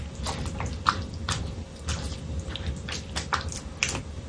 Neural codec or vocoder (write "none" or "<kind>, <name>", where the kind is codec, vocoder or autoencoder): vocoder, BigVGAN v2